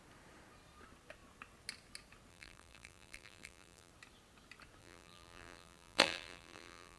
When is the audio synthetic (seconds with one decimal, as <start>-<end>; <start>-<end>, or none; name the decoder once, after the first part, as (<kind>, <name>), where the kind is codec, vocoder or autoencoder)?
2.3-3.9 (vocoder, BigVGAN v2); 4.8-7.0